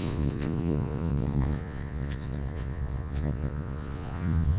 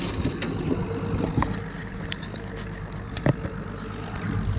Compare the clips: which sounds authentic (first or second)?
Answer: second